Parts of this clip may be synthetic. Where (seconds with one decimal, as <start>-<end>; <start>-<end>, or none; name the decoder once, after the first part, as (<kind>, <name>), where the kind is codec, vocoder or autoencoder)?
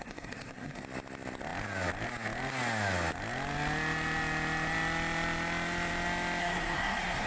0.0-0.8 (codec, SNAC); 6.4-7.3